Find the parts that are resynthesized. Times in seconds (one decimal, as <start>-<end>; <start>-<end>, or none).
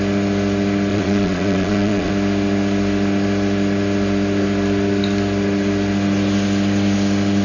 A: 0.9-2.1